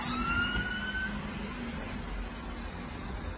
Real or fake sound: real